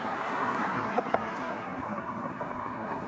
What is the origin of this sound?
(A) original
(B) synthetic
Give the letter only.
B